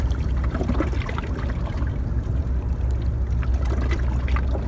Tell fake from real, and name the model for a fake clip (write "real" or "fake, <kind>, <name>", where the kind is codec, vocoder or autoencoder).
real